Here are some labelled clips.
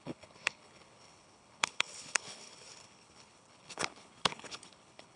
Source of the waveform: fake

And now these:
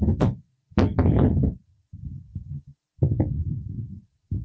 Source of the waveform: fake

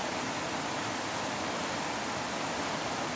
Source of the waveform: real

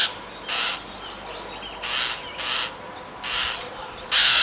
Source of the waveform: real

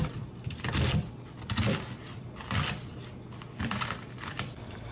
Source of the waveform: real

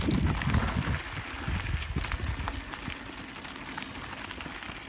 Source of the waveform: real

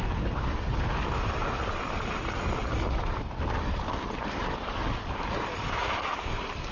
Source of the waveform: real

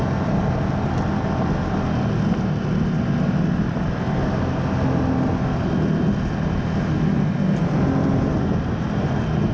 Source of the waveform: real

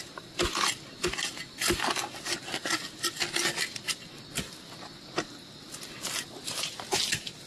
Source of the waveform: real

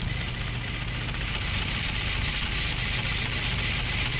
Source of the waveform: real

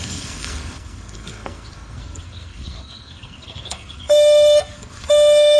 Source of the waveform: fake